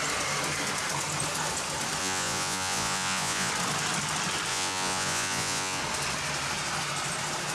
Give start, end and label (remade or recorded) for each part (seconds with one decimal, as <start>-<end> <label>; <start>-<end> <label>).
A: 0.0-2.0 recorded; 2.0-3.5 remade; 3.5-4.5 recorded; 4.5-5.8 remade; 5.8-7.5 recorded